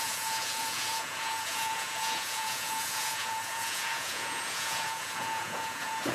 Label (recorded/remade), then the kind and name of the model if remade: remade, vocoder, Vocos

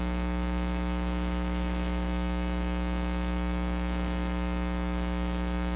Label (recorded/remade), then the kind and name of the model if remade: remade, autoencoder, DAC-VAE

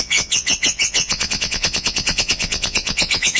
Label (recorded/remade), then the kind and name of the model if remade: remade, vocoder, WaveNeXt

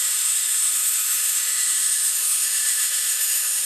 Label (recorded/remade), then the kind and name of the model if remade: remade, autoencoder, DAC-VAE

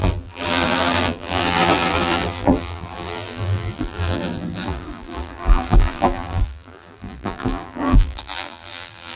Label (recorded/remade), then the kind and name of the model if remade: remade, vocoder, BigVGAN v2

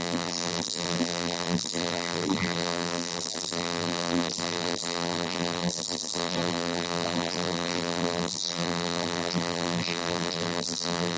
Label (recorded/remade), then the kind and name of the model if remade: remade, vocoder, BigVGAN v2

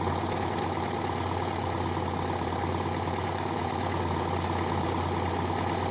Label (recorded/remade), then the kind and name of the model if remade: recorded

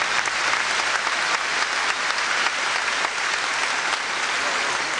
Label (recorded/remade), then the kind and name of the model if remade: recorded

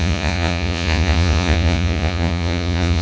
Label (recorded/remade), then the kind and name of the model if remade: remade, vocoder, Vocos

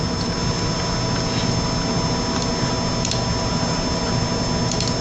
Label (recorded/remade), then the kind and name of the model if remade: recorded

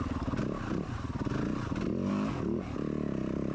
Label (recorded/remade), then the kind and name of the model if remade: recorded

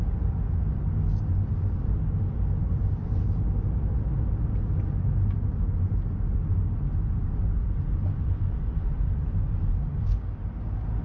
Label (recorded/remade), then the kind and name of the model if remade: recorded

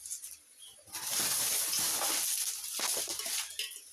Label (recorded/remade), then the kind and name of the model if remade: recorded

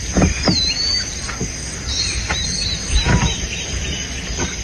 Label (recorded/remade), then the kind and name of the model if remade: recorded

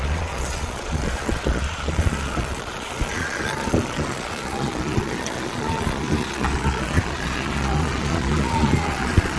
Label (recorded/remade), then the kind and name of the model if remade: remade, vocoder, Vocos